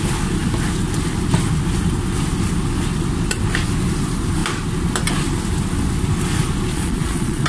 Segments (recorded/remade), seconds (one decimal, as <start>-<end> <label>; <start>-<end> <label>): 0.0-6.7 recorded; 6.7-7.5 remade